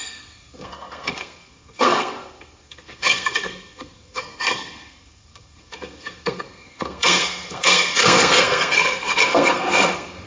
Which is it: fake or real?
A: fake